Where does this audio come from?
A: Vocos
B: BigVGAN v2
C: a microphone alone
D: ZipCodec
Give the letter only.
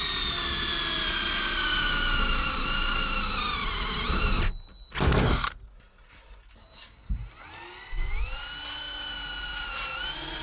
C